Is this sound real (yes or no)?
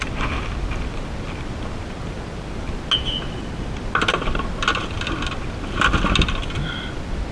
yes